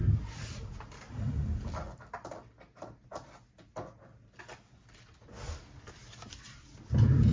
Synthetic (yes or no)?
no